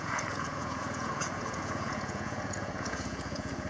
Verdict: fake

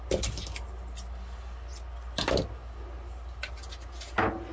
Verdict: real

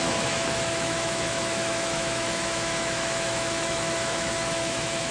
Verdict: fake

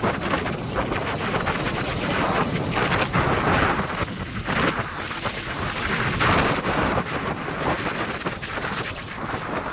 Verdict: real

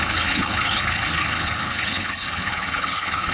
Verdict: fake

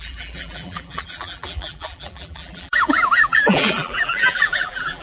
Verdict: fake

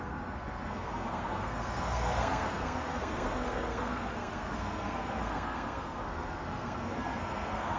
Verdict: fake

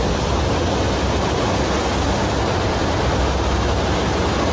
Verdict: real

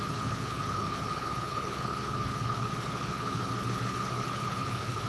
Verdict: fake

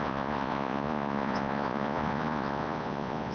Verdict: fake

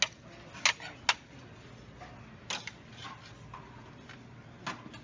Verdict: real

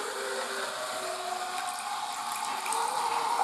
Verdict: fake